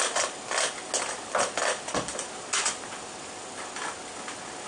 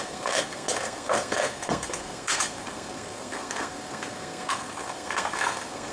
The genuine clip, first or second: first